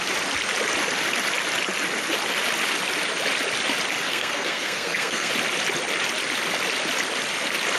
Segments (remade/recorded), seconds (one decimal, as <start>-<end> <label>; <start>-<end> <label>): 0.0-4.1 recorded; 4.1-5.3 remade; 5.3-7.8 recorded